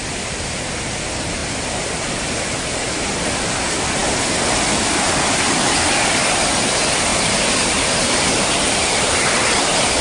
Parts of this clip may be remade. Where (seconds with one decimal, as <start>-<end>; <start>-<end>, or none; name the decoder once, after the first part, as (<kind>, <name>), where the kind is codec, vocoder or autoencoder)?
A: 1.4-3.1 (vocoder, BigVGAN v2); 7.1-9.1